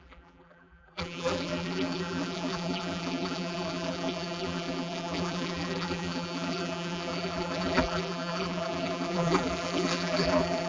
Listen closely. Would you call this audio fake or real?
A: fake